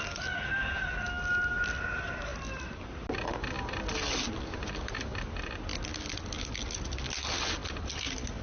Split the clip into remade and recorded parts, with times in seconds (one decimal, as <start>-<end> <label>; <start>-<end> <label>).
0.0-8.4 recorded